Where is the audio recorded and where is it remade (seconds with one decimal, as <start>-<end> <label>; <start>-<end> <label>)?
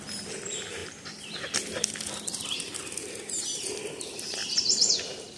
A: 0.0-4.4 recorded; 4.4-4.9 remade; 4.9-5.4 recorded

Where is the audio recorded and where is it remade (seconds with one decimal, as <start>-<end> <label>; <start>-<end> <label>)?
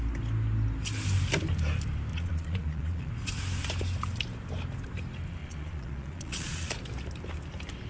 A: 0.0-2.1 recorded; 2.1-3.1 remade; 3.1-5.4 recorded; 5.4-6.7 remade; 6.7-7.9 recorded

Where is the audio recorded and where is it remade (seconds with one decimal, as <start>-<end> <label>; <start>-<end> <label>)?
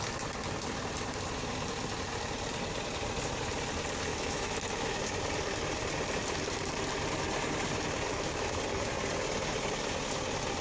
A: 0.0-4.1 recorded; 4.1-5.0 remade; 5.0-8.1 recorded; 8.1-8.6 remade; 8.6-10.6 recorded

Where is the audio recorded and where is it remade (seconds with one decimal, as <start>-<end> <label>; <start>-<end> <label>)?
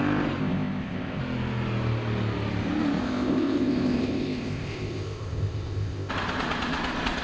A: 0.0-0.4 recorded; 0.4-1.2 remade; 1.2-3.0 recorded; 3.0-6.1 remade; 6.1-7.2 recorded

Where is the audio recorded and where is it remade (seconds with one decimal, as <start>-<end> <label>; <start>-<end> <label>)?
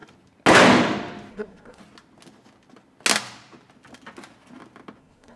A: 0.0-1.3 recorded; 1.3-1.8 remade; 1.8-5.0 recorded; 5.0-5.4 remade